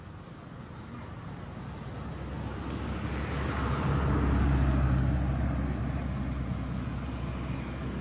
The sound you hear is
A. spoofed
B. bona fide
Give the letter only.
B